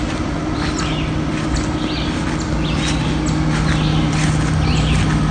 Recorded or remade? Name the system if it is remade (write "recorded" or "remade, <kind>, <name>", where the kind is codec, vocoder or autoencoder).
recorded